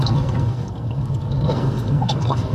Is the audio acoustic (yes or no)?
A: no